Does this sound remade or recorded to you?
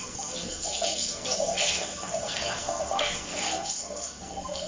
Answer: remade